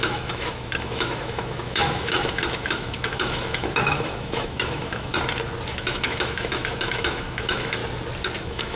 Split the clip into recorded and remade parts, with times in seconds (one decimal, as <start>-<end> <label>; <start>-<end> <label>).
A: 0.0-5.1 remade; 5.1-5.7 recorded; 5.7-7.8 remade; 7.8-8.4 recorded; 8.4-8.8 remade